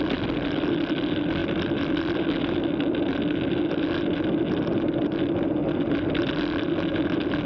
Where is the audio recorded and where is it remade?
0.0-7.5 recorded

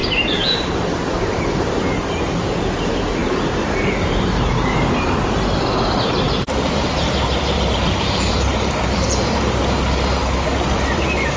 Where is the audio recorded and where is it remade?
0.0-11.4 remade

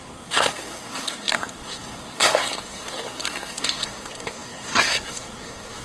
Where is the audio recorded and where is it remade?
0.0-5.8 remade

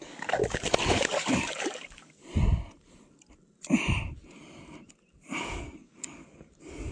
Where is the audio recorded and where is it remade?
0.0-0.4 remade; 0.4-0.9 recorded; 0.9-2.2 remade; 2.2-5.4 recorded; 5.4-6.9 remade

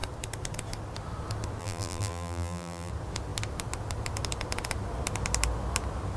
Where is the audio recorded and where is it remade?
0.0-1.6 recorded; 1.6-2.9 remade; 2.9-6.2 recorded

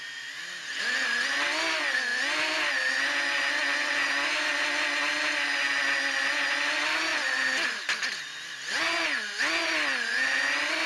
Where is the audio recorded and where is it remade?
0.0-10.9 recorded

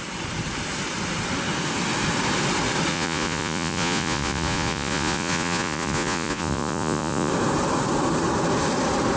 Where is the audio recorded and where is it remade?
0.0-2.9 recorded; 2.9-7.3 remade; 7.3-9.2 recorded